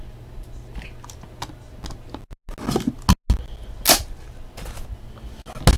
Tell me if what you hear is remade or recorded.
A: recorded